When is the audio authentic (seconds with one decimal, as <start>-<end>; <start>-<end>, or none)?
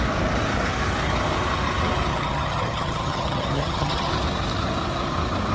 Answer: 0.0-2.1; 4.1-5.5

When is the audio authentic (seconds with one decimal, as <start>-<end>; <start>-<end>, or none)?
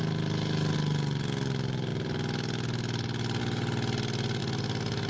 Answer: 0.0-5.1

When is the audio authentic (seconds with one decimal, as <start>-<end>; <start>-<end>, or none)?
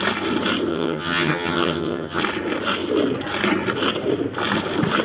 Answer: 0.0-0.7; 2.2-5.0